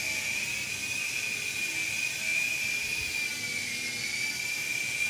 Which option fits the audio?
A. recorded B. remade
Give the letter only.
A